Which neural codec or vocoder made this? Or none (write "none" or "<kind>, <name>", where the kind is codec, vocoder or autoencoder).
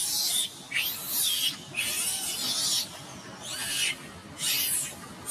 none